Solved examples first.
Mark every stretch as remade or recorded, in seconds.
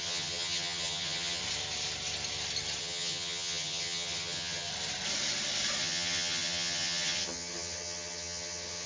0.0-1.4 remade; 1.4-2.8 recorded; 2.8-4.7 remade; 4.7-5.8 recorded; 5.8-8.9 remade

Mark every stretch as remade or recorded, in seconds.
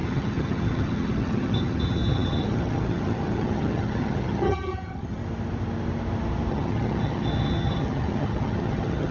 0.0-5.2 remade; 5.2-6.5 recorded; 6.5-9.1 remade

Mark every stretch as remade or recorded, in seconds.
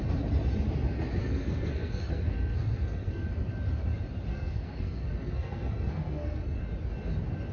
0.0-1.2 recorded; 1.2-3.3 remade; 3.3-4.3 recorded; 4.3-6.6 remade; 6.6-7.5 recorded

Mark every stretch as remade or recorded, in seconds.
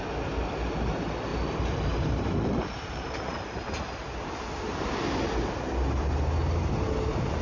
0.0-1.3 recorded; 1.3-3.8 remade; 3.8-7.4 recorded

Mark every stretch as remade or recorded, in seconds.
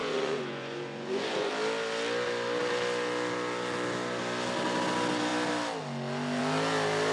0.0-1.5 remade; 1.5-7.1 recorded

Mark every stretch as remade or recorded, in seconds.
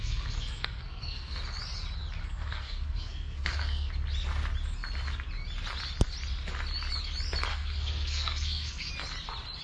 0.0-1.4 remade; 1.4-2.2 recorded; 2.2-3.9 remade; 3.9-7.5 recorded; 7.5-8.9 remade; 8.9-9.6 recorded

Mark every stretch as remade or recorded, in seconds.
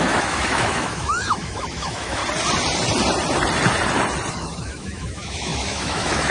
0.0-2.2 remade; 2.2-4.3 recorded; 4.3-6.3 remade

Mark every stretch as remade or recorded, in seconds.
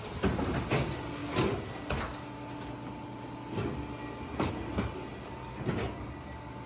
0.0-6.7 recorded